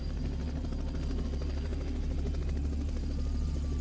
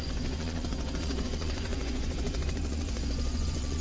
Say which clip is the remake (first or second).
second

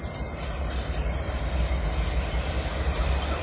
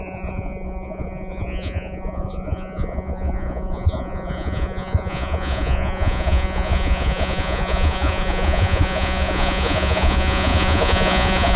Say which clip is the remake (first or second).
second